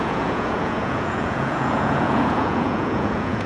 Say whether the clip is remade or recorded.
remade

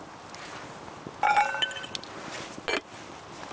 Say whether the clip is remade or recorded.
recorded